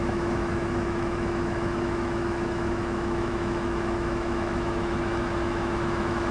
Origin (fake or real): fake